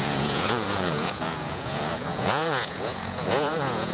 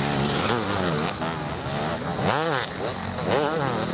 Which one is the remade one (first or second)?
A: first